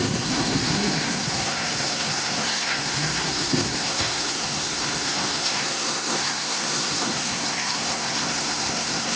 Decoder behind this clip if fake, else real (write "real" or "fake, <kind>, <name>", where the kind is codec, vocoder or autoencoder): fake, codec, SNAC